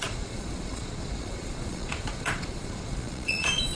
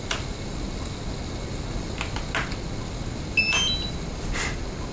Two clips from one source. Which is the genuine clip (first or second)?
second